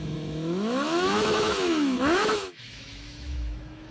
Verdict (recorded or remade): remade